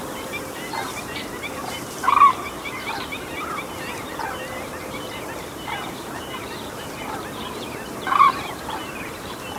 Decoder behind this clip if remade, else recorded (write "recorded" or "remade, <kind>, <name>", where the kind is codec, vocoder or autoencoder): remade, vocoder, BigVGAN v2